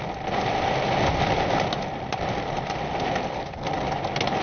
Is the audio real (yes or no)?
yes